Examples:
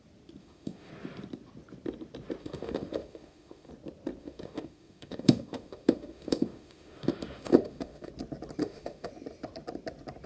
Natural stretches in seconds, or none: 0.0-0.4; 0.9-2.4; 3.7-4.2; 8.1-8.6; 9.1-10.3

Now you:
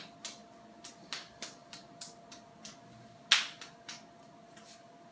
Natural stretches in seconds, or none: 0.0-5.1